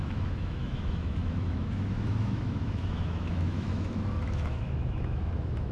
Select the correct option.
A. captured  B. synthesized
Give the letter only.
B